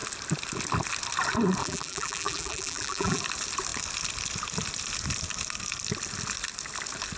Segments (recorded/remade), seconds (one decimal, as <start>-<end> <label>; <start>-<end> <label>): 0.0-1.6 recorded; 1.6-3.2 remade; 3.2-7.2 recorded

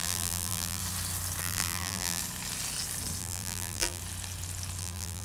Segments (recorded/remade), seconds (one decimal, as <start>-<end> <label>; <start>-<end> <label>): 0.0-0.8 remade; 0.8-1.4 recorded; 1.4-2.2 remade; 2.2-3.2 recorded; 3.2-4.0 remade; 4.0-4.8 recorded; 4.8-5.2 remade

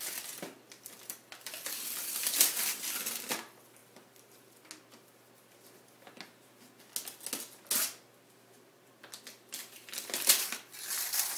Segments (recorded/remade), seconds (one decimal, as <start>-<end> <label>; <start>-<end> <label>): 0.0-3.8 remade; 3.8-8.9 recorded; 8.9-11.4 remade

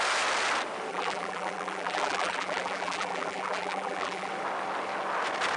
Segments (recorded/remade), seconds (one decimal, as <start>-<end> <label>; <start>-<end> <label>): 0.0-0.9 recorded; 0.9-4.3 remade; 4.3-5.6 recorded

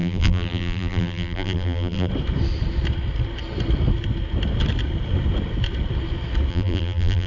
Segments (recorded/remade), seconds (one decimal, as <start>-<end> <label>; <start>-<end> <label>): 0.0-2.1 remade; 2.1-6.5 recorded; 6.5-7.3 remade

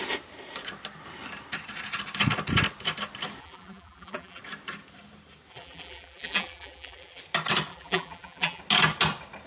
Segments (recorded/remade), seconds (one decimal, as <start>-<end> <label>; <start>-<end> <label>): 0.0-3.4 recorded; 3.4-4.4 remade; 4.4-5.5 recorded; 5.5-7.2 remade; 7.2-7.7 recorded; 7.7-8.6 remade; 8.6-9.5 recorded

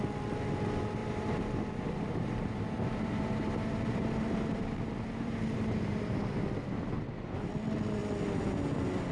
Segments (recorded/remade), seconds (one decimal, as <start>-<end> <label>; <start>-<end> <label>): 0.0-1.0 recorded; 1.0-6.2 remade; 6.2-9.1 recorded